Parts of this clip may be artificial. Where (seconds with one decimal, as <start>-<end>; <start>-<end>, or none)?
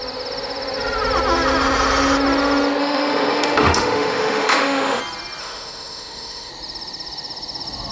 2.8-5.0; 5.4-6.5